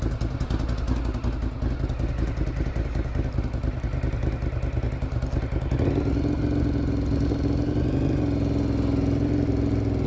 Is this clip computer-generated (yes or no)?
no